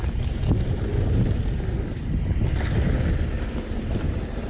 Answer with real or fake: real